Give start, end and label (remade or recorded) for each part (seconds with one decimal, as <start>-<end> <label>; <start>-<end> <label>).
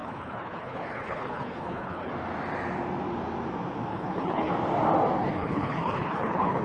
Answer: 0.0-2.1 remade; 2.1-3.9 recorded; 3.9-4.5 remade; 4.5-5.2 recorded; 5.2-6.6 remade